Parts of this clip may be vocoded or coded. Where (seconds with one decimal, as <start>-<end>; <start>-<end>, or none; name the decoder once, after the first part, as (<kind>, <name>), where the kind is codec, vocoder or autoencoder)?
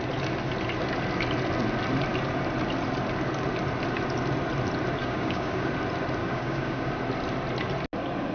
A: 5.0-5.7 (codec, DAC); 6.2-6.9